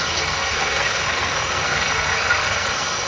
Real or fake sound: fake